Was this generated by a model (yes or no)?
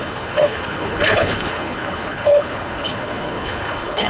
yes